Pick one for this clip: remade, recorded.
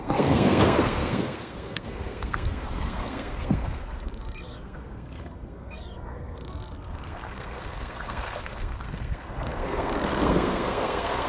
remade